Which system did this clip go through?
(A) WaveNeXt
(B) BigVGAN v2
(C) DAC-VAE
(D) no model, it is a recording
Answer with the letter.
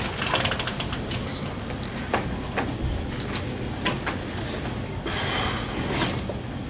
D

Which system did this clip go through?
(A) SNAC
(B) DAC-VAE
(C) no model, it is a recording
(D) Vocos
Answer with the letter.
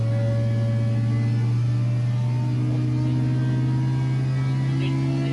C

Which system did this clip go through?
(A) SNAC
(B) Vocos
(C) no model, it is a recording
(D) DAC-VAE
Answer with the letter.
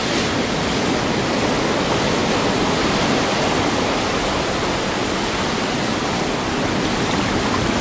C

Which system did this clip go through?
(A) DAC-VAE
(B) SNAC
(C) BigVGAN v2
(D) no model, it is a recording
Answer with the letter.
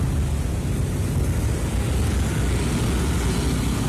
D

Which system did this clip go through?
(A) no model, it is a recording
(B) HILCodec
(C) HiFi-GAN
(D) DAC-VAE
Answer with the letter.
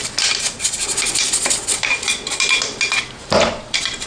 A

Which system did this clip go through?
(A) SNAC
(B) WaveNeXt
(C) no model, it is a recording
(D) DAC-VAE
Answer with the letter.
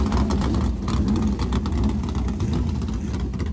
C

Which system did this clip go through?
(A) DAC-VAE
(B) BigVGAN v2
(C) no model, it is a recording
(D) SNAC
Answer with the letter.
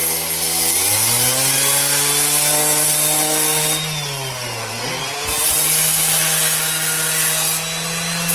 C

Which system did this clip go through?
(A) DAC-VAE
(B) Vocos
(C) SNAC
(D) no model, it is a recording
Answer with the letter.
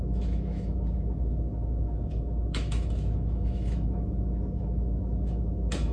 A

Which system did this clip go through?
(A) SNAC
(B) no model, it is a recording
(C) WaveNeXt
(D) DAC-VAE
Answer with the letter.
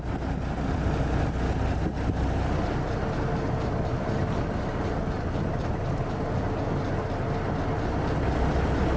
B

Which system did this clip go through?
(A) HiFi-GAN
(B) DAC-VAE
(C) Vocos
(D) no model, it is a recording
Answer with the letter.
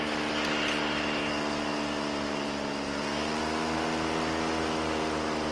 D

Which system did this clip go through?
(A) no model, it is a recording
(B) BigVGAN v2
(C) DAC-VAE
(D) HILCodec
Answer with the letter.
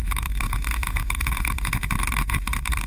C